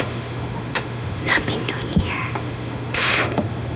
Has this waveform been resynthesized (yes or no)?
yes